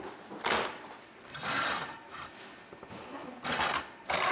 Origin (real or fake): real